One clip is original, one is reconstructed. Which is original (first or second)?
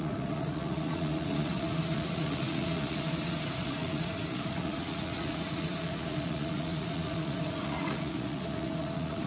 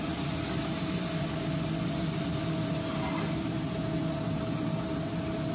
second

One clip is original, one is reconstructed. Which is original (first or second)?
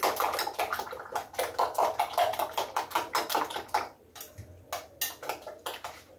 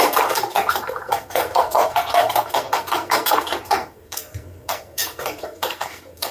first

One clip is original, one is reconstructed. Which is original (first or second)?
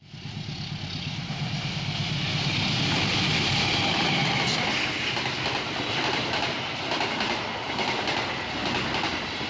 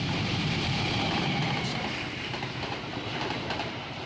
first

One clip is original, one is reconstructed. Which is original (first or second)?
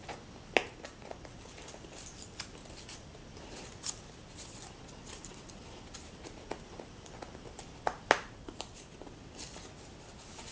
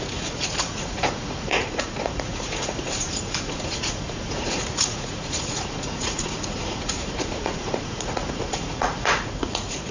first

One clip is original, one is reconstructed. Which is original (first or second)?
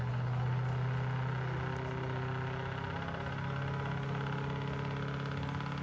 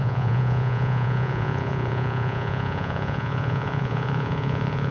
first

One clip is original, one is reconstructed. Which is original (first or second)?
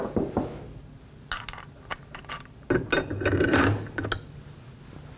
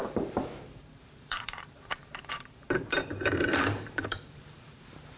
first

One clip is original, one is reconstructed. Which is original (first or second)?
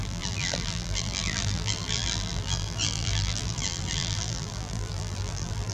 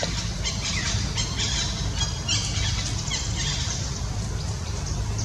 second